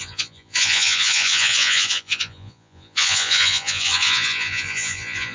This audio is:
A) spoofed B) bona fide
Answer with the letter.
A